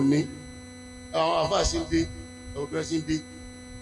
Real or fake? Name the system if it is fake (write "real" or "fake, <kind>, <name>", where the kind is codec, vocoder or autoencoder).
real